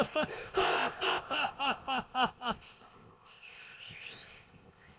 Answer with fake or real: fake